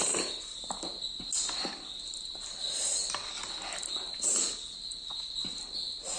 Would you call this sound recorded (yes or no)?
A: yes